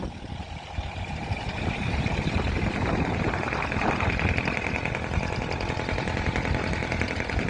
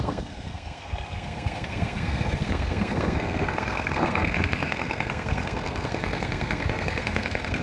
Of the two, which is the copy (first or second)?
second